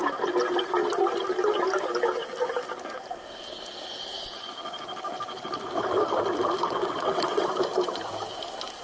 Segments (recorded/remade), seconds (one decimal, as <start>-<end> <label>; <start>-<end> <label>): 0.0-6.6 recorded; 6.6-7.5 remade; 7.5-8.8 recorded